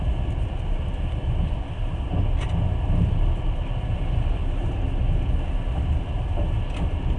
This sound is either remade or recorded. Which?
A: recorded